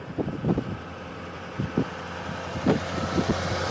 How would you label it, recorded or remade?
recorded